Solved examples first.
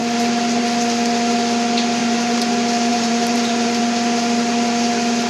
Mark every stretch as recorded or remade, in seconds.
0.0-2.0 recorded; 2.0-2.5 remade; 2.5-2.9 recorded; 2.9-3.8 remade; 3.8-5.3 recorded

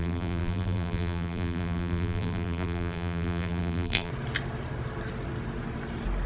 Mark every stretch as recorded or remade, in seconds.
0.0-4.1 remade; 4.1-6.3 recorded

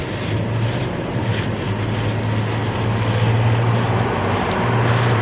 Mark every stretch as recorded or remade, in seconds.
0.0-0.7 recorded; 0.7-1.3 remade; 1.3-4.4 recorded; 4.4-5.2 remade